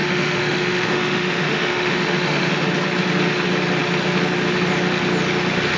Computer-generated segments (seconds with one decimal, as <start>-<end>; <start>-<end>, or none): 0.0-2.5